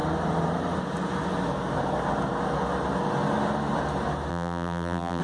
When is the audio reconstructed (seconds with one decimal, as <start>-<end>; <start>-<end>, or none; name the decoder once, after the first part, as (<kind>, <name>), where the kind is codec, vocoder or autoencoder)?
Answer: 4.3-5.2 (vocoder, BigVGAN v2)